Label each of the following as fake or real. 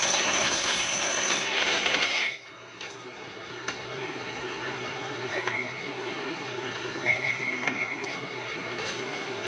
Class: fake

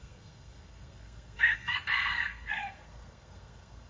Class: fake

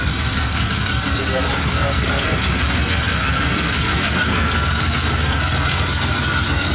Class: fake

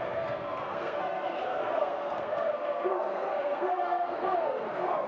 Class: fake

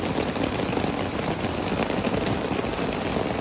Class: real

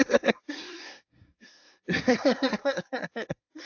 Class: fake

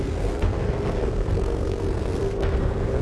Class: fake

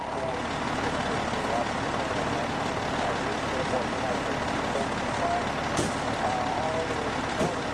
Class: real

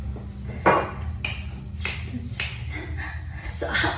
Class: real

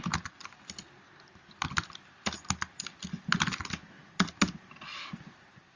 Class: real